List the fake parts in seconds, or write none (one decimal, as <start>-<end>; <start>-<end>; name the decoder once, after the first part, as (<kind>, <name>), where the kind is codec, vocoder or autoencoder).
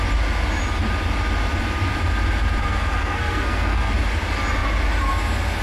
2.6-3.9 (codec, SNAC)